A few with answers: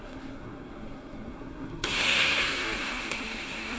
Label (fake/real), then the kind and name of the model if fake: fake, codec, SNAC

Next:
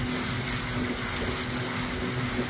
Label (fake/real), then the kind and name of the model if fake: real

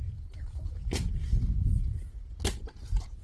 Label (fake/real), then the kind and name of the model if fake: real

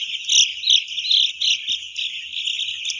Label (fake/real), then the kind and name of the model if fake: real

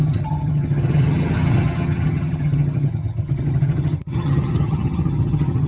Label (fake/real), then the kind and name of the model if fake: fake, vocoder, HiFi-GAN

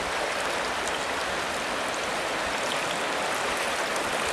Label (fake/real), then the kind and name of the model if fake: real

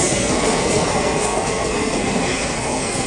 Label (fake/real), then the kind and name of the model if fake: fake, codec, SNAC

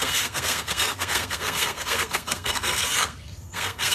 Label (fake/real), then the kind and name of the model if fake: fake, codec, SNAC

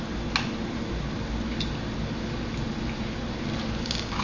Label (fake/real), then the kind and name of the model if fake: real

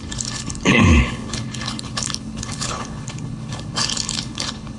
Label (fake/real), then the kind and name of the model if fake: fake, codec, HILCodec